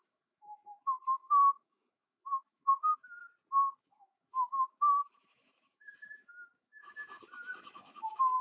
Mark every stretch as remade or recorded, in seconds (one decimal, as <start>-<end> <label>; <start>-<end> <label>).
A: 0.0-3.2 remade; 3.2-3.8 recorded; 3.8-8.4 remade